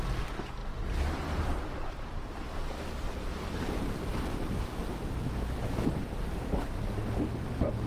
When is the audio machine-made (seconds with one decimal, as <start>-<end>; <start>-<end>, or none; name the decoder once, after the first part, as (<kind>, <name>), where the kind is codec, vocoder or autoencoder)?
0.6-5.3 (vocoder, BigVGAN v2)